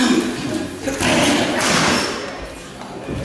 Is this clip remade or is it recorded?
recorded